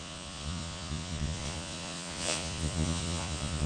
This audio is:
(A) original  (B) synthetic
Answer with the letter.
B